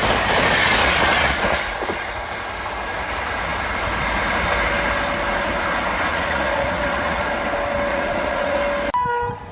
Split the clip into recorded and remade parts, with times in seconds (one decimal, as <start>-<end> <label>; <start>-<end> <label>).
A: 0.0-0.8 recorded; 0.8-2.3 remade; 2.3-6.1 recorded; 6.1-7.3 remade; 7.3-7.9 recorded; 7.9-8.6 remade; 8.6-9.5 recorded

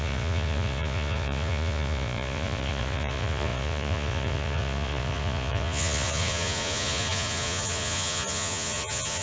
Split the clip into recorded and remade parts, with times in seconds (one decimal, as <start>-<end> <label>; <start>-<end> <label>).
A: 0.0-9.2 remade